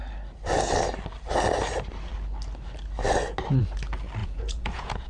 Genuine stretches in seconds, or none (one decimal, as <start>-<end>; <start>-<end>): 0.0-4.2